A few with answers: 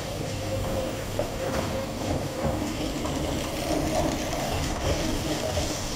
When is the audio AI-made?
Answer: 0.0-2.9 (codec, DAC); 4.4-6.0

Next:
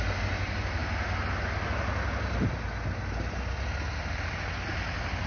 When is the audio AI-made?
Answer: none

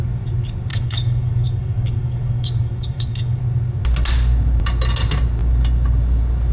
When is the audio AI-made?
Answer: 0.7-3.4 (codec, DAC)

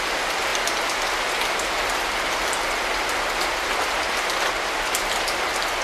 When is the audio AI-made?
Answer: none

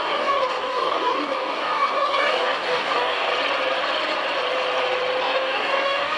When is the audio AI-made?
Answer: 0.0-3.3 (codec, DAC); 5.2-6.2

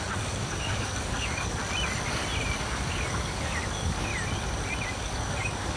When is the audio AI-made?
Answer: 0.0-1.6 (codec, DAC); 2.6-4.1; 4.9-5.8